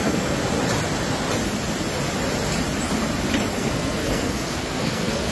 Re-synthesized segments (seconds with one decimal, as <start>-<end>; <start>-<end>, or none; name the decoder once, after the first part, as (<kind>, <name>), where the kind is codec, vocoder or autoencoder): 0.0-0.4 (codec, SNAC); 3.6-5.3